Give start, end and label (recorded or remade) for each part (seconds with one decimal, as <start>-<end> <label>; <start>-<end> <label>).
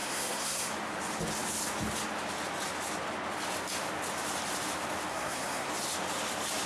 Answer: 0.0-0.7 remade; 0.7-5.1 recorded; 5.1-5.7 remade; 5.7-6.7 recorded